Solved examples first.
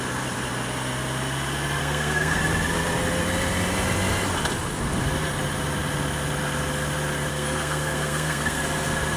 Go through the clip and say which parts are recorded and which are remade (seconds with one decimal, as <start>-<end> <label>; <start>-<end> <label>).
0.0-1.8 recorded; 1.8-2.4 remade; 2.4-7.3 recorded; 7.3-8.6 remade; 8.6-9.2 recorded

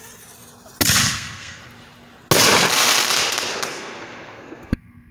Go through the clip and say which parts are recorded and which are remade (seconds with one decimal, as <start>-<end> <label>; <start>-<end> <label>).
0.0-1.0 recorded; 1.0-1.6 remade; 1.6-3.7 recorded; 3.7-5.1 remade

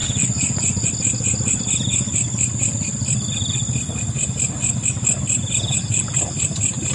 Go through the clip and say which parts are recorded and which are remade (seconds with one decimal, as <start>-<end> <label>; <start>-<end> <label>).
0.0-0.9 remade; 0.9-6.9 recorded

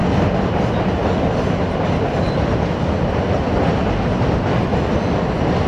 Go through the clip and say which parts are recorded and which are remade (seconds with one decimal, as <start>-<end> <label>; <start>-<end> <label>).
0.0-5.7 recorded

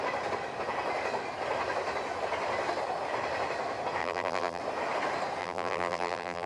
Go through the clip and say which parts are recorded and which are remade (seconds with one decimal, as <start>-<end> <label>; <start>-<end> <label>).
0.0-4.0 recorded; 4.0-4.6 remade; 4.6-5.4 recorded; 5.4-6.5 remade